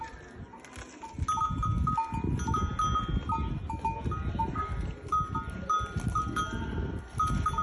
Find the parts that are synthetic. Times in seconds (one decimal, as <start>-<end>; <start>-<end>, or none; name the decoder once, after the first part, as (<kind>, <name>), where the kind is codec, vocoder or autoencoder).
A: none